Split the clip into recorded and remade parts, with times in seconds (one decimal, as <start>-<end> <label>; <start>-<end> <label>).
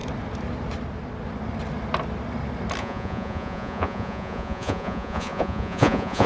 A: 0.0-2.8 recorded; 2.8-6.3 remade